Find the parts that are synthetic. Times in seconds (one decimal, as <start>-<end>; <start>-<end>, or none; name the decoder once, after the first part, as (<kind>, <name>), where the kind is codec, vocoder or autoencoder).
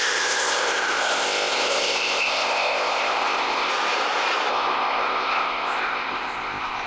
0.0-3.7 (codec, ZipCodec); 4.5-6.9